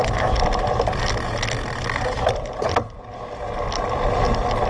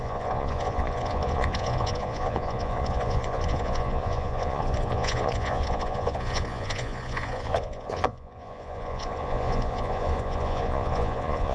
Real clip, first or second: first